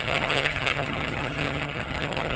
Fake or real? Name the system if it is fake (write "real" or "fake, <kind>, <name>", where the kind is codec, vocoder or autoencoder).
fake, vocoder, HiFi-GAN